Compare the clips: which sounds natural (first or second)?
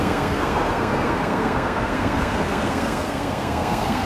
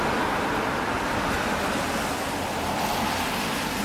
second